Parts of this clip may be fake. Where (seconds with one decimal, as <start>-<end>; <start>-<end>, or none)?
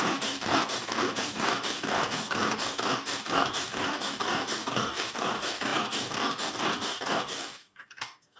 0.0-8.4